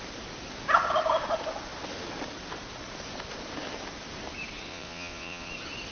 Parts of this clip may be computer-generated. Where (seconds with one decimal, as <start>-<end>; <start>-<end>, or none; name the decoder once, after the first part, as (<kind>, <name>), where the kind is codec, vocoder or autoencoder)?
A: 4.7-5.5 (vocoder, Vocos)